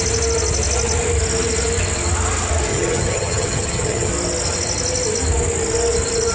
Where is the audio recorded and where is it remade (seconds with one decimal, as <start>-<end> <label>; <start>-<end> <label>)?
0.0-2.7 recorded; 2.7-4.1 remade; 4.1-6.3 recorded

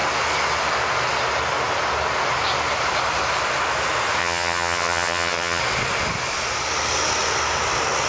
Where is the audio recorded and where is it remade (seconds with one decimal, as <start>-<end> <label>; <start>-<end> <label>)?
0.0-4.2 recorded; 4.2-5.6 remade; 5.6-8.1 recorded

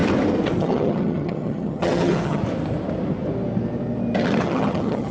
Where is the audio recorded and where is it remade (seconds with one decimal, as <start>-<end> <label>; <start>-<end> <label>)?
0.0-0.6 recorded; 0.6-2.4 remade; 2.4-4.4 recorded; 4.4-5.1 remade